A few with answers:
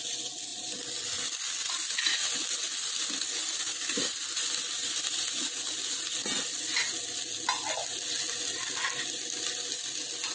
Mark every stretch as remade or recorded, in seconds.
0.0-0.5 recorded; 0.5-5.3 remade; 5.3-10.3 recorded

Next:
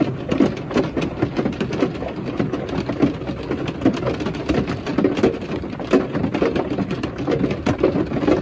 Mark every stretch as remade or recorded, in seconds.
0.0-8.4 recorded

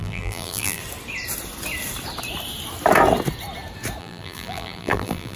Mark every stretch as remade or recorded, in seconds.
0.0-0.8 remade; 0.8-4.0 recorded; 4.0-5.4 remade

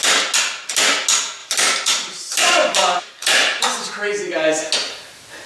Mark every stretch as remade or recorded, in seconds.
0.0-1.4 recorded; 1.4-4.7 remade; 4.7-5.5 recorded

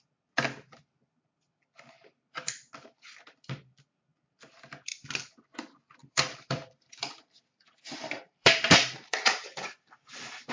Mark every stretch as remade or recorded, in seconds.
0.0-6.0 recorded; 6.0-9.9 remade; 9.9-10.5 recorded